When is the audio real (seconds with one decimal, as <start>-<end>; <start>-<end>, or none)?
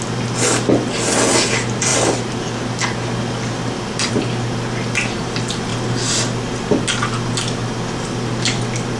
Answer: 0.0-9.0